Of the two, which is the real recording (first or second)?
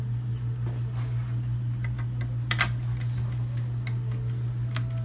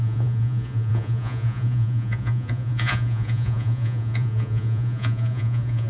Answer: first